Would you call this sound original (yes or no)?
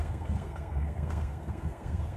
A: no